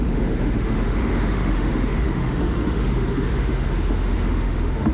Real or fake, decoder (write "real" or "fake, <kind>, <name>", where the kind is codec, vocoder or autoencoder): fake, autoencoder, DAC-VAE